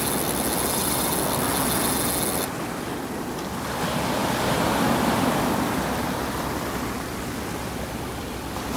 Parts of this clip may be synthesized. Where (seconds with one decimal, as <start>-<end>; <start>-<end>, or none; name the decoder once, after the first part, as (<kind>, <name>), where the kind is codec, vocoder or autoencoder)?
none